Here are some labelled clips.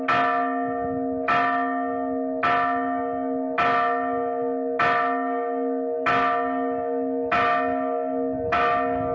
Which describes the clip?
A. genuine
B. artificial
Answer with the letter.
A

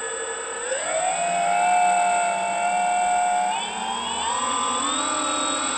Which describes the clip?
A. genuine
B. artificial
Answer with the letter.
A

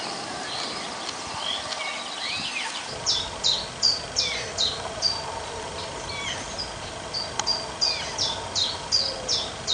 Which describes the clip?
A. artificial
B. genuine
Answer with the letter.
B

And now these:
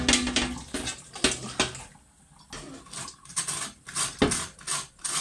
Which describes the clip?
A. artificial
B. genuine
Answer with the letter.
B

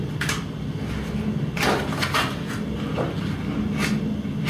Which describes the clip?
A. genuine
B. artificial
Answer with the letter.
A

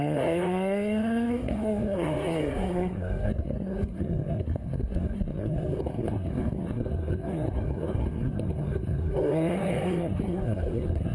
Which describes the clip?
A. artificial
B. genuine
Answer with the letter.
A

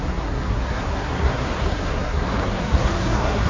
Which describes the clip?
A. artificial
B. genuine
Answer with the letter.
A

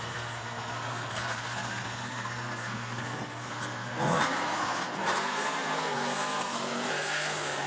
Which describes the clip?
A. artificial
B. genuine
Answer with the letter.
A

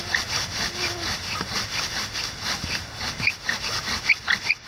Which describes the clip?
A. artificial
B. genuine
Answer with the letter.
B